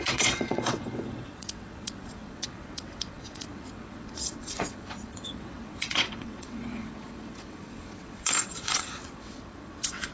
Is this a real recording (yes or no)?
no